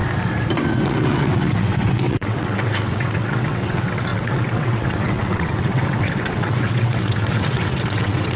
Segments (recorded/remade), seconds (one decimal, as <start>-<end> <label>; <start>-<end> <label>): 0.0-0.7 recorded; 0.7-8.4 remade